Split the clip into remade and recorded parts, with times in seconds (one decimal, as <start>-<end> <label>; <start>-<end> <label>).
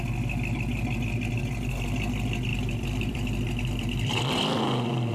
0.0-0.7 recorded; 0.7-1.3 remade; 1.3-2.5 recorded; 2.5-4.1 remade; 4.1-5.1 recorded